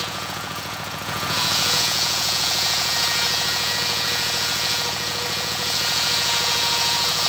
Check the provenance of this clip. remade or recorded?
remade